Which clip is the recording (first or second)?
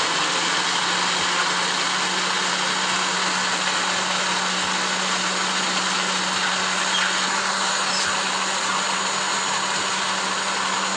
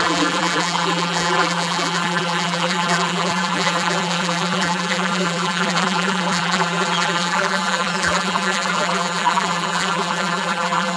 first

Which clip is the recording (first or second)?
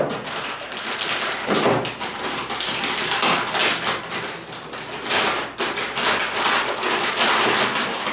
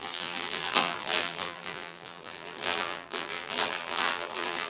first